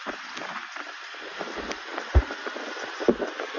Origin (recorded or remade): recorded